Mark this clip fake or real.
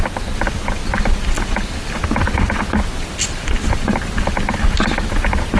real